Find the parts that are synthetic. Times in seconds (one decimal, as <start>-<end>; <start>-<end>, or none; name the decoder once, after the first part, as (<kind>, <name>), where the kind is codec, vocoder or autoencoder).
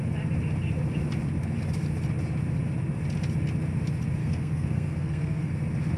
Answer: 4.2-5.5 (codec, SNAC)